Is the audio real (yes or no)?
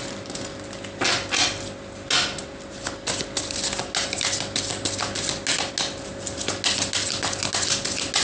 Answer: yes